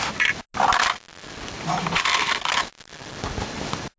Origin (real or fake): real